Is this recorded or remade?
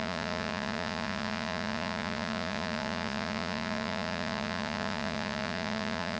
remade